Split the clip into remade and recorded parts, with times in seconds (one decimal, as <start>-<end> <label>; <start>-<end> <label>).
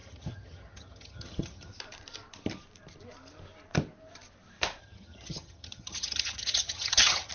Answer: 0.0-1.7 remade; 1.7-4.8 recorded; 4.8-7.3 remade